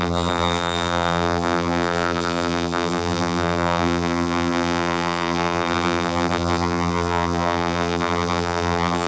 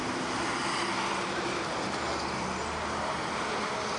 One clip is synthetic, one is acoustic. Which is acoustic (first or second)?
second